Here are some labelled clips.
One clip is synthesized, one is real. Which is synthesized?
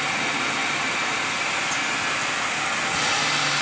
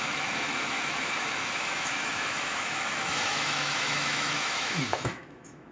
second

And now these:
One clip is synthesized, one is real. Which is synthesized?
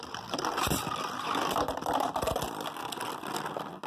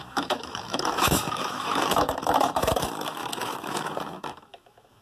second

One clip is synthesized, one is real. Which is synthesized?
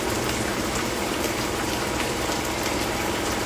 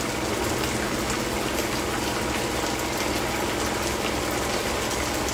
first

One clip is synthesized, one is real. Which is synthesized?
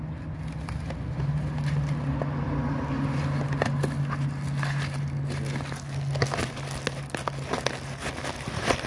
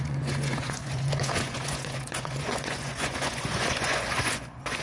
second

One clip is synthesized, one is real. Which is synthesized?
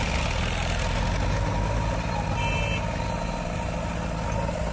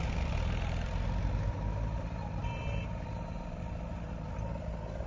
second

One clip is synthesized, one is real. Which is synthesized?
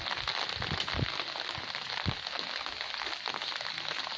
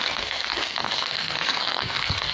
second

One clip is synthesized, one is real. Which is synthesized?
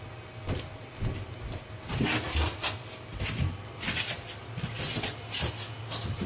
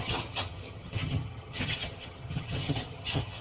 second